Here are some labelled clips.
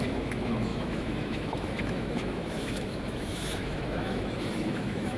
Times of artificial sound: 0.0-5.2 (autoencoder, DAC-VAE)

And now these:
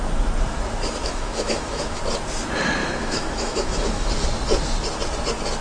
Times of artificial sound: 1.0-2.0 (autoencoder, DAC-VAE); 2.8-4.1

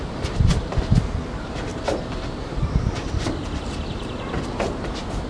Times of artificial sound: none

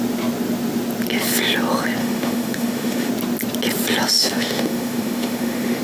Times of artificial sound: 2.0-3.1 (autoencoder, DAC-VAE); 4.2-5.8

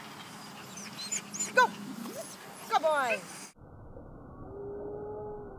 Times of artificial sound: none